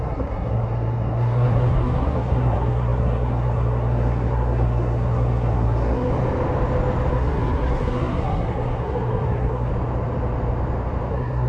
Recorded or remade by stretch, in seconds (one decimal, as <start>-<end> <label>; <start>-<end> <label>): 0.0-6.1 remade; 6.1-7.1 recorded; 7.1-9.7 remade; 9.7-11.1 recorded; 11.1-11.5 remade